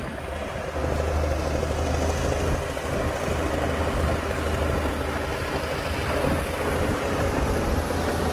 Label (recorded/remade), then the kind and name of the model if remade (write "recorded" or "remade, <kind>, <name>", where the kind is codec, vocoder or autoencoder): recorded